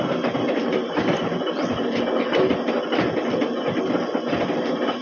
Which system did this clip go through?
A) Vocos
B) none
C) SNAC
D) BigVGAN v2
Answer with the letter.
D